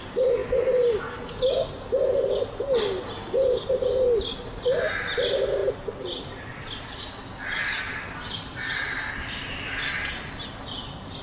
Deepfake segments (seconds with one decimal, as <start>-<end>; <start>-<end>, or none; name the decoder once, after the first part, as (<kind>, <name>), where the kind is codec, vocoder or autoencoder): none

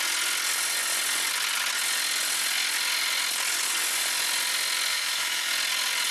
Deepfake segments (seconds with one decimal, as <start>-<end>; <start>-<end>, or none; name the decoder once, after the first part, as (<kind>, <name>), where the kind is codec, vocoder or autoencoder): 4.9-5.5 (autoencoder, DAC-VAE)